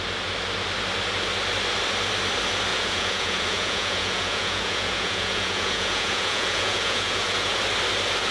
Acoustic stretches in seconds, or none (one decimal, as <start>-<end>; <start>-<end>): 0.0-2.7; 7.6-8.3